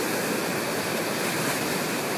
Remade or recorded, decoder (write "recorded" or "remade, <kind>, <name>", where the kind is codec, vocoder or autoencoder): recorded